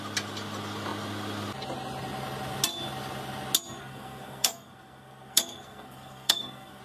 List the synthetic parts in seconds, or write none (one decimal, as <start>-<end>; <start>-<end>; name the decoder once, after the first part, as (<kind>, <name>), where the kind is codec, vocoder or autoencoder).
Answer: 3.8-6.8 (codec, SNAC)